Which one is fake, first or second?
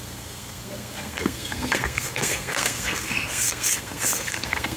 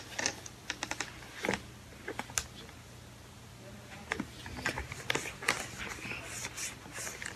first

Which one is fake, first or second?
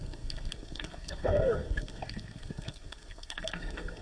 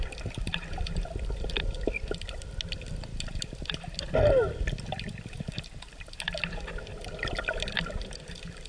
first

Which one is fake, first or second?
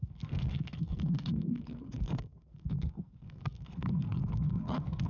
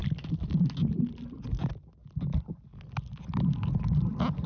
first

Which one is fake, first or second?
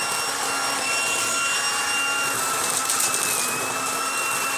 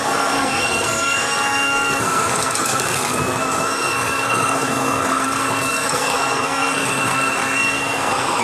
second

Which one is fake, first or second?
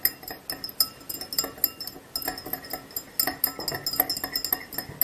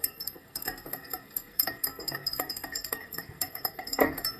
second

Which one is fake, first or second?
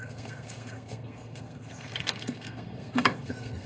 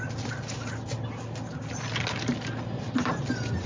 first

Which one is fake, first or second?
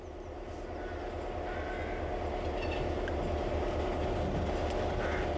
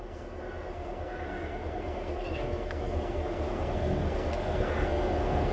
second